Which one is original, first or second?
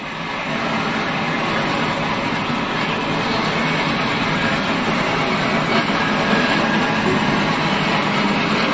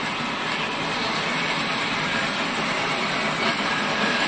first